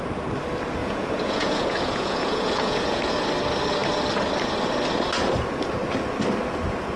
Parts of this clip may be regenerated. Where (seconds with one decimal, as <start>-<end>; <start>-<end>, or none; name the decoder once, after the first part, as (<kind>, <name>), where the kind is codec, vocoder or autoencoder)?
0.8-3.0 (vocoder, Vocos)